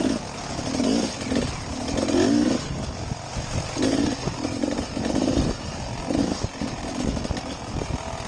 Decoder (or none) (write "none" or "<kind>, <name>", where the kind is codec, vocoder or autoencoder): none